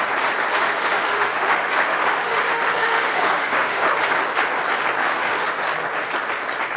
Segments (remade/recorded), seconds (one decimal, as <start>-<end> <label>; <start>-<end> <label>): 0.0-0.5 recorded; 0.5-4.0 remade; 4.0-5.0 recorded; 5.0-5.6 remade; 5.6-6.8 recorded